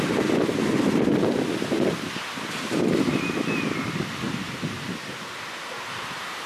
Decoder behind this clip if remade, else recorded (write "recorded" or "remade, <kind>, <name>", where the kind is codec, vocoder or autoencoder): recorded